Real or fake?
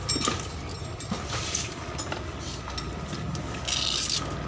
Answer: real